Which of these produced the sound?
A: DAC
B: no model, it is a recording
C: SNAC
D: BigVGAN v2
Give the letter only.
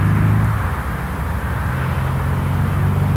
B